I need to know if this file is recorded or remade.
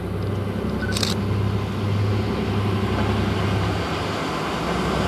recorded